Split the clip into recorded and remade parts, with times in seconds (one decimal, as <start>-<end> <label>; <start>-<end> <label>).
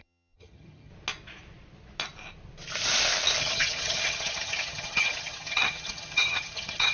0.0-0.9 remade; 0.9-3.4 recorded; 3.4-6.9 remade